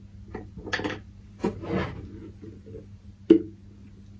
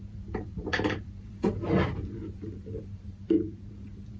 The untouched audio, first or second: first